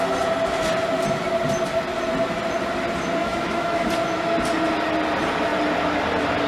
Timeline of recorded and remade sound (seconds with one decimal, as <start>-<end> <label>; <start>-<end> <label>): 0.0-3.2 recorded; 3.2-3.9 remade; 3.9-6.5 recorded